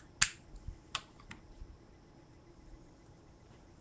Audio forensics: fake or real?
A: real